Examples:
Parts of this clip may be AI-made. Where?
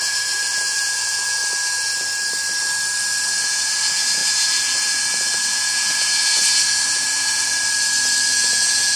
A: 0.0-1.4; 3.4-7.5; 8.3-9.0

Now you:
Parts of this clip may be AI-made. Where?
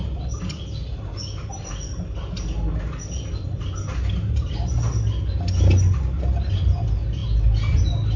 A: none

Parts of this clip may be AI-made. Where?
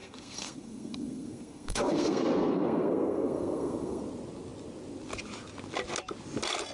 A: 0.0-4.0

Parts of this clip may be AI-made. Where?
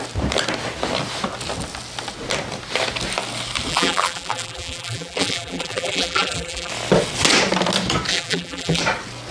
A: 3.7-6.7; 8.1-8.8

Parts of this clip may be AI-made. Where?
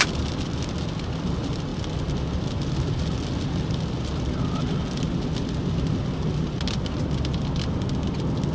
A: none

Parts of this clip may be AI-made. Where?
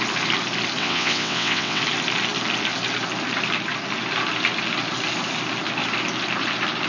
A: 0.8-1.8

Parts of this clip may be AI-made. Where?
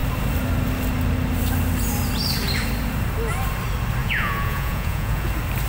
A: 4.0-5.3